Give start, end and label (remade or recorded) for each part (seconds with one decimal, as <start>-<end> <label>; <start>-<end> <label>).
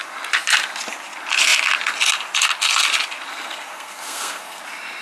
0.0-3.3 recorded; 3.3-4.6 remade; 4.6-5.0 recorded